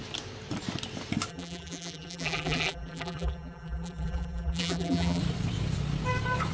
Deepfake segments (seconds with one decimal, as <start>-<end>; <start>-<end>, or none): 1.3-5.2